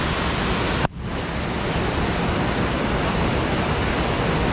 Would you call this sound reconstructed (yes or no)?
no